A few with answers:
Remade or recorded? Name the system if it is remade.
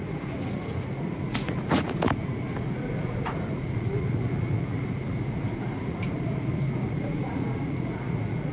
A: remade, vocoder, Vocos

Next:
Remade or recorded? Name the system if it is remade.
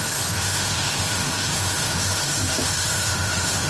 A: remade, autoencoder, DAC-VAE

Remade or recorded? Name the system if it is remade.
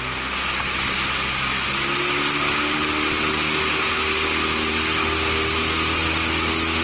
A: recorded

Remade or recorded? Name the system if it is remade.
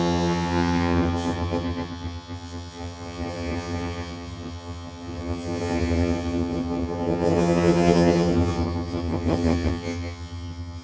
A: remade, vocoder, HiFi-GAN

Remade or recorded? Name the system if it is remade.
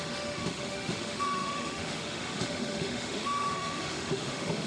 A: remade, autoencoder, DAC-VAE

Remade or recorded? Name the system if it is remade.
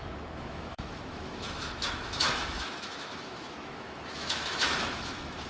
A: remade, autoencoder, DAC-VAE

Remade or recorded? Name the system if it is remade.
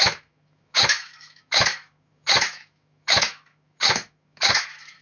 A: remade, autoencoder, DAC-VAE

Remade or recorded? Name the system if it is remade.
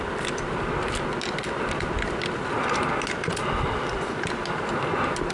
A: recorded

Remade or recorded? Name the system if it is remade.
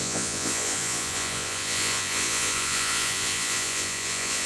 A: remade, vocoder, Vocos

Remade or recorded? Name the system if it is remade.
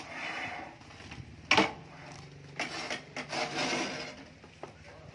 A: recorded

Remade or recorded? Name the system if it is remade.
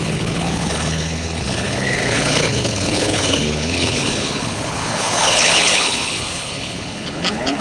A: remade, codec, HILCodec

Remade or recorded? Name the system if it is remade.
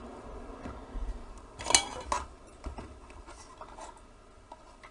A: recorded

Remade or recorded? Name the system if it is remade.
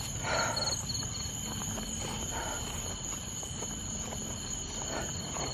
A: recorded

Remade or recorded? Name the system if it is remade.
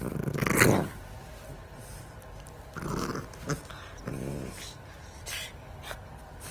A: recorded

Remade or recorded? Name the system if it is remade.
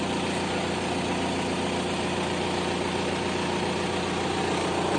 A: recorded